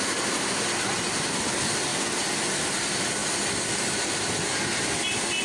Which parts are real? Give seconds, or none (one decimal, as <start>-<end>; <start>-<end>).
0.0-5.4